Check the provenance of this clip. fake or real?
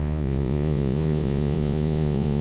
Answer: fake